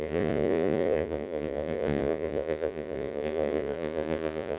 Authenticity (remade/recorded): remade